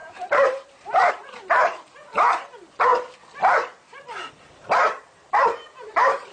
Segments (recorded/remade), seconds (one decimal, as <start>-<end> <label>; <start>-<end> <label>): 0.0-2.9 remade; 2.9-4.4 recorded; 4.4-6.3 remade